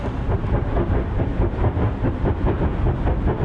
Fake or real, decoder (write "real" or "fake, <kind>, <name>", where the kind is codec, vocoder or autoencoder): real